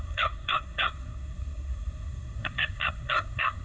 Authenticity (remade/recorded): remade